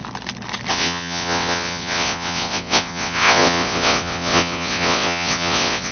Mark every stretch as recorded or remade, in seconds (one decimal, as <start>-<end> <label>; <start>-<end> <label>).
0.0-0.7 recorded; 0.7-5.9 remade